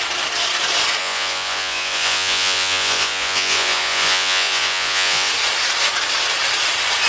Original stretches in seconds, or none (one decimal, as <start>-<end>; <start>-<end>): 0.0-1.0; 5.3-7.1